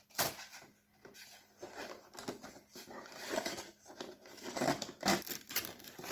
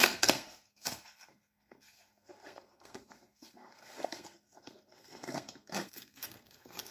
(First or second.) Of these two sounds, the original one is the first